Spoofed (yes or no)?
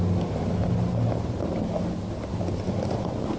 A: no